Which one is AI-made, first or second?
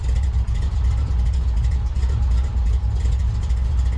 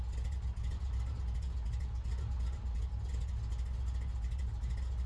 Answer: first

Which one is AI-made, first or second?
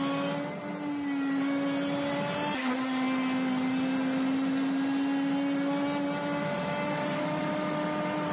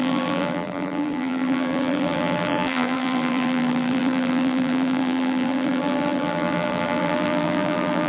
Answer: second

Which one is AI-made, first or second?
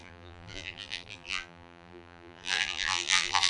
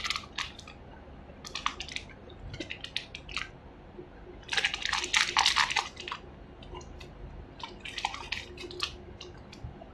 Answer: first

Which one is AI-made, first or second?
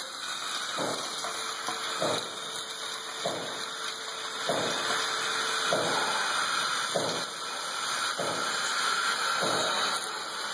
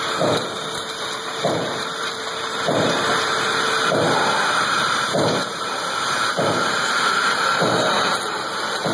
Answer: second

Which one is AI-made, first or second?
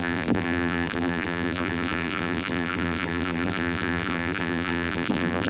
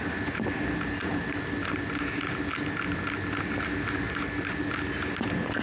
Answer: first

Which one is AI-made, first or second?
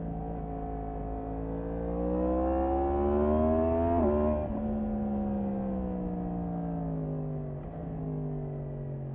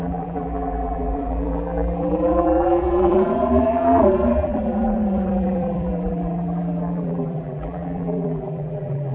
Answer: second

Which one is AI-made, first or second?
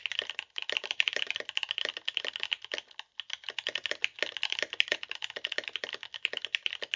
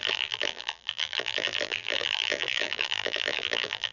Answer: second